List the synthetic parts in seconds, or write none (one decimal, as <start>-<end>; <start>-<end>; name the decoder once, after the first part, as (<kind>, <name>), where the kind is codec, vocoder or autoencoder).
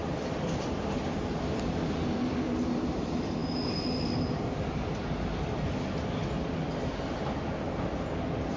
none